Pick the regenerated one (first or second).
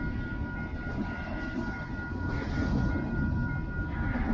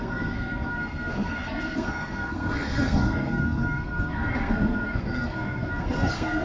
second